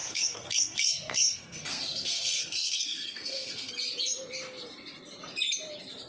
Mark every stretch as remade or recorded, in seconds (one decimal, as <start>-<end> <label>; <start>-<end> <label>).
0.0-3.7 remade; 3.7-6.1 recorded